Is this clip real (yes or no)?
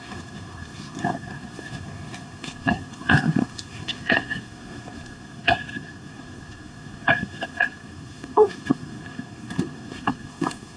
no